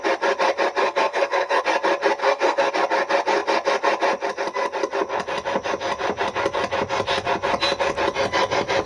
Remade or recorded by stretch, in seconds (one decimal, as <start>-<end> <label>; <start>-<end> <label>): 0.0-0.8 recorded; 0.8-1.6 remade; 1.6-2.2 recorded; 2.2-2.7 remade; 2.7-8.9 recorded